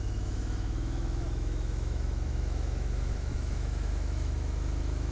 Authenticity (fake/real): fake